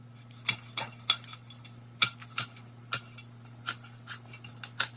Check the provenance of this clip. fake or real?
real